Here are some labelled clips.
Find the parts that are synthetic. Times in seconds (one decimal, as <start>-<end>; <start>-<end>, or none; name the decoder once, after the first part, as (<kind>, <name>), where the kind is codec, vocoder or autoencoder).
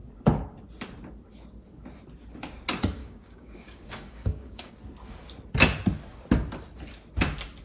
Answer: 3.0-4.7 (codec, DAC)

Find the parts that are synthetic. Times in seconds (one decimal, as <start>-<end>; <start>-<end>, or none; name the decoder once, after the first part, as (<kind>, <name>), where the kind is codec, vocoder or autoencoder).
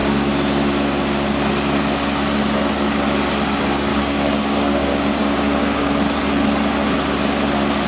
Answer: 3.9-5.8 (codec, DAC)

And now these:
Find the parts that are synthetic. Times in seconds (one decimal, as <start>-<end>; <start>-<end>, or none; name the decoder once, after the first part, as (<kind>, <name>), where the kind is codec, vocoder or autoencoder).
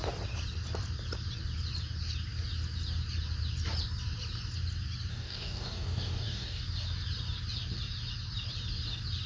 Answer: 5.1-6.6 (codec, DAC)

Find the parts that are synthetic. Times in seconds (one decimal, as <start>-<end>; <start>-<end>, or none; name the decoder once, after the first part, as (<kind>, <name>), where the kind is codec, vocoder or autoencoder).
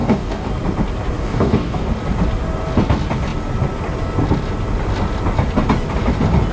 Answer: 0.0-0.5 (codec, DAC); 1.2-1.9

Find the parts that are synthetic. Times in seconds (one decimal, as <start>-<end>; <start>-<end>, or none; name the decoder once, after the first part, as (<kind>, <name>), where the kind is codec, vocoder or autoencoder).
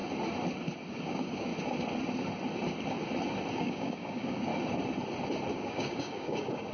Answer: 0.9-1.5 (codec, DAC); 3.5-4.5; 5.5-6.7